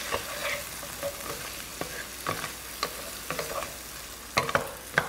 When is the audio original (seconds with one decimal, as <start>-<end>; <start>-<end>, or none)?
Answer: 0.0-5.1